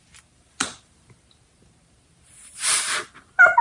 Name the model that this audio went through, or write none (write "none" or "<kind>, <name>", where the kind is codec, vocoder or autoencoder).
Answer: vocoder, BigVGAN v2